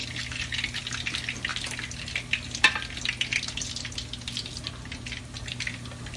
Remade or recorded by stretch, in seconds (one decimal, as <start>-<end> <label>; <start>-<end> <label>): 0.0-6.2 recorded